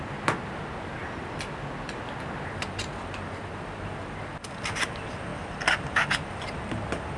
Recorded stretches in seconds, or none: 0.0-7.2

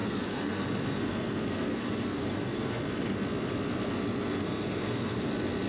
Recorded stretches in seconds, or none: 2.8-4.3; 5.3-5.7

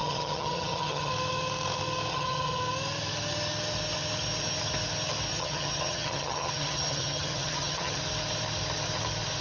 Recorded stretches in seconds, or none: 1.1-2.1; 2.6-5.3; 8.0-9.4

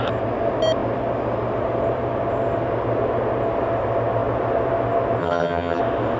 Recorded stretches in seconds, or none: 0.0-5.2; 5.8-6.2

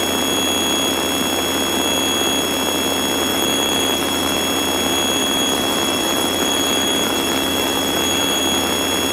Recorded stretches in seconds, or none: 0.0-3.3; 4.4-5.2; 8.4-9.1